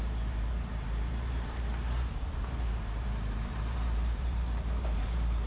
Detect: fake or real fake